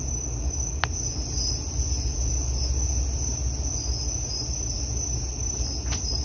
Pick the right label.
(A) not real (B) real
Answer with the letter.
B